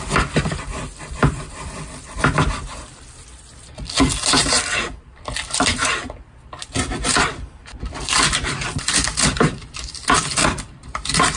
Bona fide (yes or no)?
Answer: no